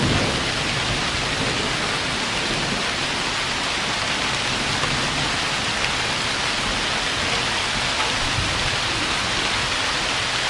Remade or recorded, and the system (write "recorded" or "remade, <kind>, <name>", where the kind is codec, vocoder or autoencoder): recorded